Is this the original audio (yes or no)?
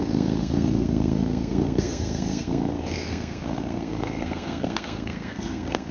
no